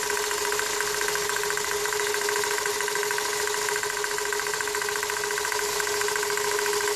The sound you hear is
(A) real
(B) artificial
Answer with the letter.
A